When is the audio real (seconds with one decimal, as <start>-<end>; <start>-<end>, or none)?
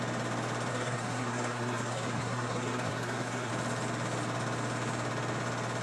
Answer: 0.0-0.7; 3.5-5.8